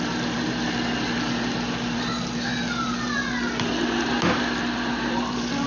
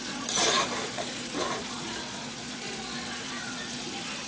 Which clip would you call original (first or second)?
first